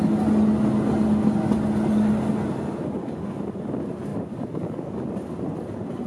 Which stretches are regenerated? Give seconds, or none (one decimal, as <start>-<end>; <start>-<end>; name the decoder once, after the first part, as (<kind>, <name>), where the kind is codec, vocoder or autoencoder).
3.0-3.6 (codec, DAC); 4.1-5.1